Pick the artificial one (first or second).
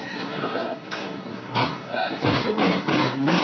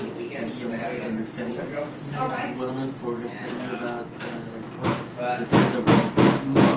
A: first